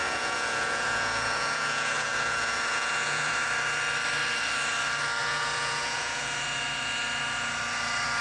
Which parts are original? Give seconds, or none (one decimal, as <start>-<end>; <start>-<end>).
3.3-5.2; 6.2-8.2